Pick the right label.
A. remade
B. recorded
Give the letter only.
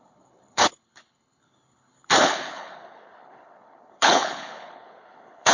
A